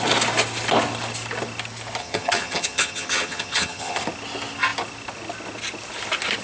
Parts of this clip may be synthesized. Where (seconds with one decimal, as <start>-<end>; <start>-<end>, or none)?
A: 2.0-4.0